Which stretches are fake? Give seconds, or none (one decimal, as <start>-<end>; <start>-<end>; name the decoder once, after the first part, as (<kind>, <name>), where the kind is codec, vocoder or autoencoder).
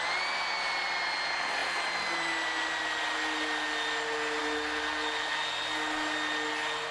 none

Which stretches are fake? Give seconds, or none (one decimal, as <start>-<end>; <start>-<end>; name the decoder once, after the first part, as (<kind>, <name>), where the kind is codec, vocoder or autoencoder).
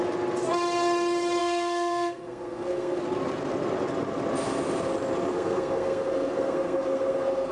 1.4-3.0 (codec, SNAC); 5.3-7.5